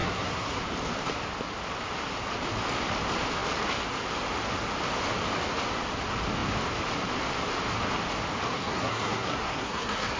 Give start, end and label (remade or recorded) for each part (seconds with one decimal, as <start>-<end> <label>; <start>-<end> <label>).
0.0-0.6 remade; 0.6-8.5 recorded; 8.5-10.2 remade